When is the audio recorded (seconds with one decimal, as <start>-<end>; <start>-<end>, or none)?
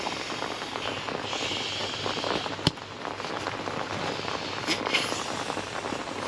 0.0-6.3